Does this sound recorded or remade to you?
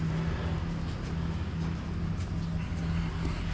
recorded